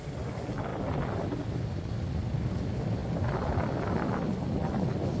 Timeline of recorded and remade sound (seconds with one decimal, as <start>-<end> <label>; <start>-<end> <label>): 0.0-5.2 recorded